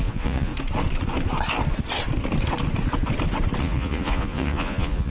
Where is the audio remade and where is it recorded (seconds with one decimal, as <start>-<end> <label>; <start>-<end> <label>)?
0.0-0.5 remade; 0.5-3.6 recorded; 3.6-5.1 remade